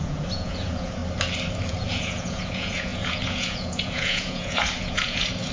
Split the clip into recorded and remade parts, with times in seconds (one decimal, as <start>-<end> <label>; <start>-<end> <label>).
0.0-1.0 remade; 1.0-1.7 recorded; 1.7-5.5 remade